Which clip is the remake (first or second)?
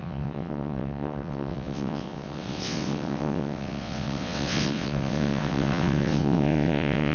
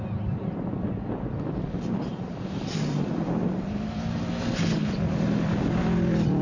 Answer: first